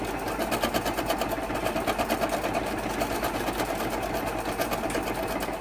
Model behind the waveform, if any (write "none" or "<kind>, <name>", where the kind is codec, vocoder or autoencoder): none